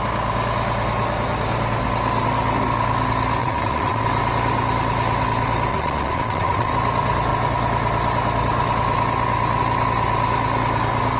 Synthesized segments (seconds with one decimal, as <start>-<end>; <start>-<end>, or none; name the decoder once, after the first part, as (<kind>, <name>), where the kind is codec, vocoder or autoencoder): 3.4-4.0 (vocoder, Vocos); 5.7-6.7